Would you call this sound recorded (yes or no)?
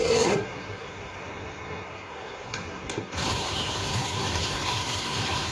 no